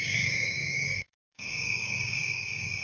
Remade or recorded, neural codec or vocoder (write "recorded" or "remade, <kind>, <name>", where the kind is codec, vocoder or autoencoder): remade, codec, DAC